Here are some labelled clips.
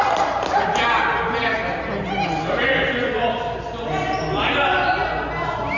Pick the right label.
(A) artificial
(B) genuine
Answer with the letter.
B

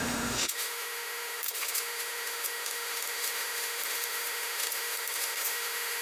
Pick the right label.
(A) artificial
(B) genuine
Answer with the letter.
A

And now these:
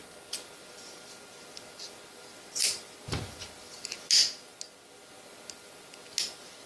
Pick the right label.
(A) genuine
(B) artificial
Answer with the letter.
A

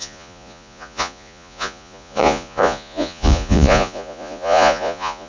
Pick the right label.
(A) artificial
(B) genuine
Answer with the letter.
A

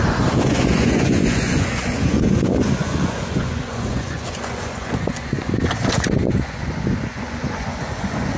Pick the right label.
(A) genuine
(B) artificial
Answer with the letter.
B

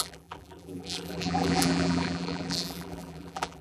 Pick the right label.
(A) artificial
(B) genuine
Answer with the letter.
A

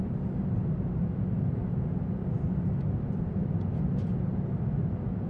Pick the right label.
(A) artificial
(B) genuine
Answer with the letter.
B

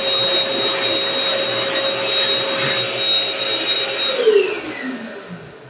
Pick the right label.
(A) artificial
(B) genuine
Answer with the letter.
B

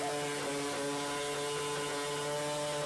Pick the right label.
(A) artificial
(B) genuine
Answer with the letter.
B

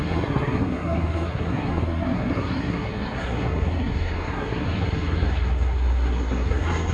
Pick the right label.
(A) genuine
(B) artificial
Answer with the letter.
B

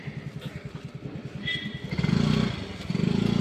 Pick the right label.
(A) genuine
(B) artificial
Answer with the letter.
A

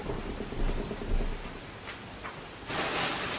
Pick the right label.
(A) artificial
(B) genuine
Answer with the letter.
B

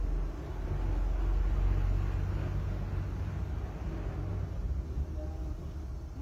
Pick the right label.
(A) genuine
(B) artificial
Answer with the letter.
A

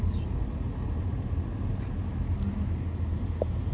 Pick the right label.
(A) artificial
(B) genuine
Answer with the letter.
B